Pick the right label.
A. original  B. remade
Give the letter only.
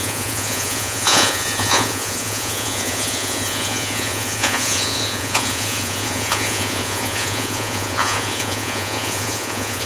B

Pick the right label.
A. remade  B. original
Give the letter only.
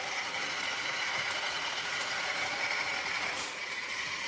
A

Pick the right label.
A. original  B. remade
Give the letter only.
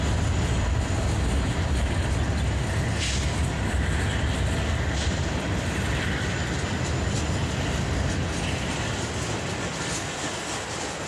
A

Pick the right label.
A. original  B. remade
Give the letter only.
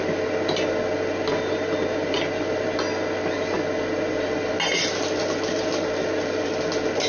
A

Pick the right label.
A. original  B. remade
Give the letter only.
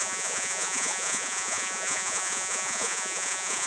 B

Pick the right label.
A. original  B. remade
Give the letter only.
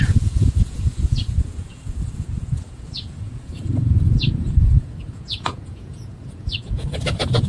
B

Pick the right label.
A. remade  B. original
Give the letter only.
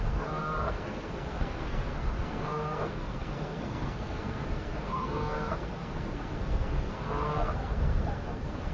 A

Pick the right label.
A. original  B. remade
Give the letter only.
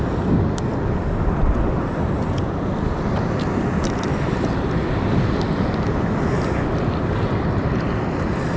A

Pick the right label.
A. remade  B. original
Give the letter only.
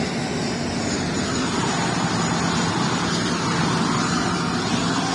B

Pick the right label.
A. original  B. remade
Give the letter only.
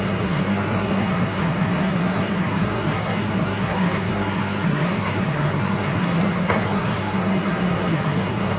B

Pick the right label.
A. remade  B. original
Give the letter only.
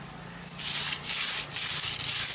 B